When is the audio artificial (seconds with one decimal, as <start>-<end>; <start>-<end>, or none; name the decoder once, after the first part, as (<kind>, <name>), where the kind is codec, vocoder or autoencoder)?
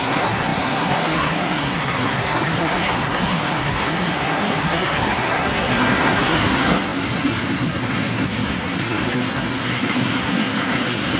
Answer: 0.0-11.2 (codec, SNAC)